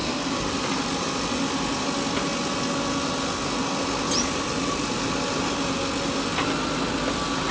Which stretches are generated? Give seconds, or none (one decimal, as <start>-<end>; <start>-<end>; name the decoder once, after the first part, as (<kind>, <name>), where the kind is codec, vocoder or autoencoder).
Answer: 0.0-1.8 (vocoder, BigVGAN v2)